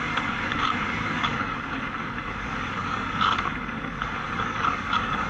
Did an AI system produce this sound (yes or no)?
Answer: yes